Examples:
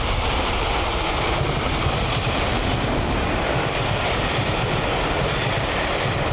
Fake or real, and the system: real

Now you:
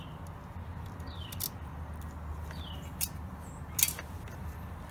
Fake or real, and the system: real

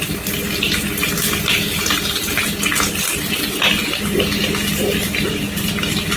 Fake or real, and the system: real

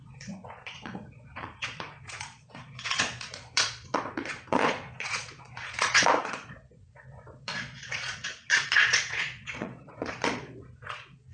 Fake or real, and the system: fake, vocoder, Vocos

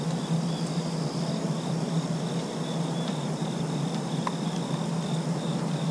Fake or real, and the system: real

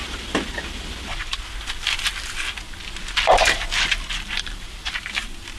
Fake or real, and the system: real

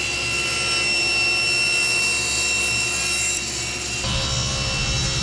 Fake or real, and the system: real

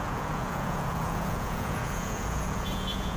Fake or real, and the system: fake, vocoder, Vocos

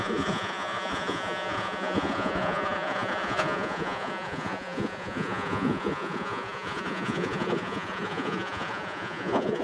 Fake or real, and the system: fake, vocoder, Vocos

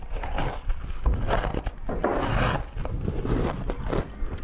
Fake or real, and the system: real